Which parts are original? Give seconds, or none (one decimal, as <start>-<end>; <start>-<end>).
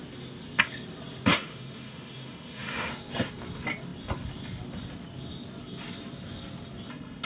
0.0-1.3; 2.9-7.3